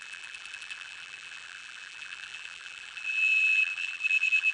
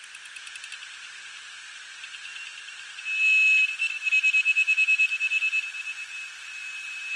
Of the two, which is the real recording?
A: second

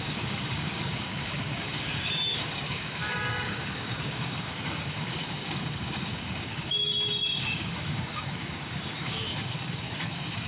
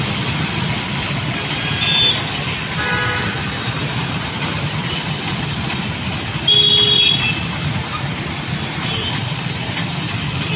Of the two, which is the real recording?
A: second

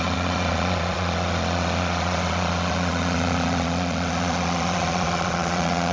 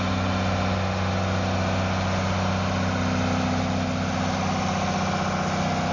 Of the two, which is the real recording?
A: second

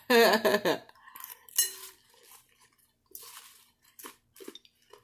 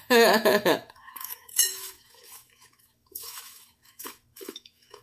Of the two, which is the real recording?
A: first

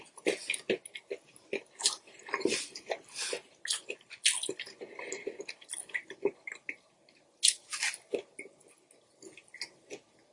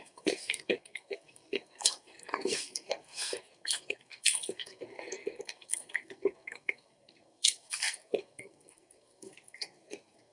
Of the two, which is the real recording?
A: first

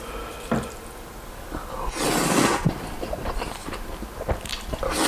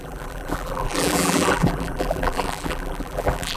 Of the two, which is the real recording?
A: first